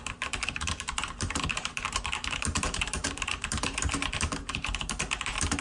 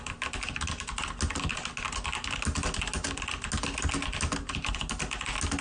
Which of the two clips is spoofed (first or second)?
first